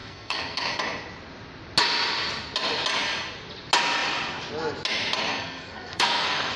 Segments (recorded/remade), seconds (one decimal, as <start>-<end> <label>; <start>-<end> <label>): 0.0-0.7 remade; 0.7-5.3 recorded; 5.3-6.6 remade